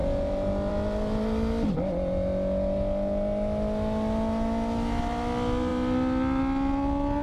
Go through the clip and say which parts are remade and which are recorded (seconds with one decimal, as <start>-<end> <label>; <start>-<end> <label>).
0.0-7.2 recorded